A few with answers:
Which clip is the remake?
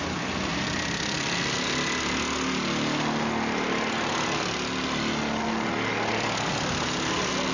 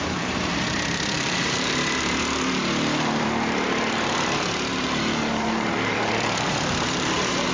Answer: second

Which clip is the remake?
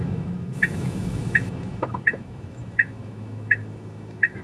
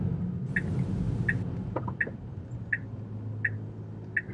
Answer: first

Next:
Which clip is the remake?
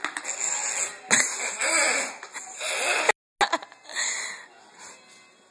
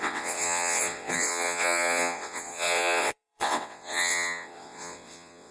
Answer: second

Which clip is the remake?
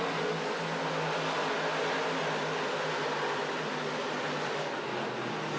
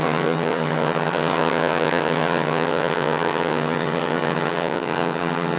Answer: second